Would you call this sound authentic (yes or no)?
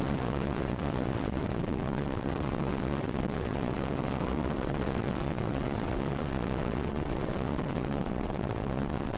no